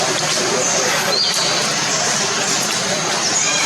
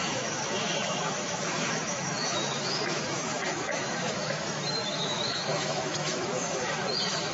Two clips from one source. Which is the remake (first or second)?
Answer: second